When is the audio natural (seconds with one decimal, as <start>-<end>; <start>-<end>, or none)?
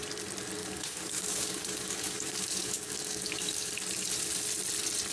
0.0-0.6; 3.7-5.1